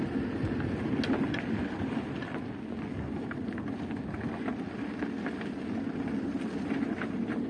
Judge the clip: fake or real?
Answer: real